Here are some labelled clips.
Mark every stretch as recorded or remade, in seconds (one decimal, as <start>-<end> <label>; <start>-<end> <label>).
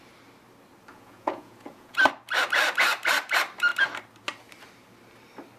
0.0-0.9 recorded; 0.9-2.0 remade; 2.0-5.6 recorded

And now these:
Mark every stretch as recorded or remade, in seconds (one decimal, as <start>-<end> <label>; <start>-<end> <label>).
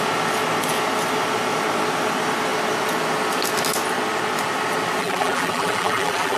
0.0-5.0 recorded; 5.0-6.4 remade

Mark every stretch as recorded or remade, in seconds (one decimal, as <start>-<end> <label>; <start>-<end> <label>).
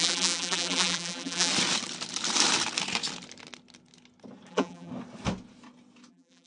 0.0-1.5 remade; 1.5-4.5 recorded; 4.5-4.9 remade; 4.9-6.1 recorded; 6.1-6.5 remade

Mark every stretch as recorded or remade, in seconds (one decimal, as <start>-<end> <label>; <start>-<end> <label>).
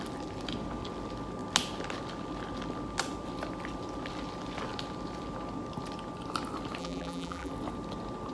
0.0-6.8 recorded; 6.8-7.5 remade; 7.5-8.3 recorded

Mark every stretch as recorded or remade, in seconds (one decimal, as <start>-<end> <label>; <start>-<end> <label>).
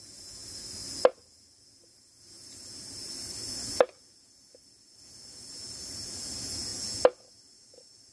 0.0-8.1 recorded